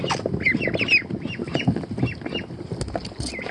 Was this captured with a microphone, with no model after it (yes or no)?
yes